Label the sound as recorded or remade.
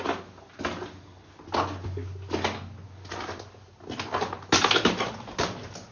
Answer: recorded